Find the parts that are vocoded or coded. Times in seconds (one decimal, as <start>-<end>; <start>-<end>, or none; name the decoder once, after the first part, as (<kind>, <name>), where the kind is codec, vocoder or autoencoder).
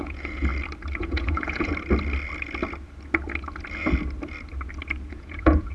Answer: 0.0-0.5 (vocoder, Vocos); 1.0-1.7; 5.1-5.7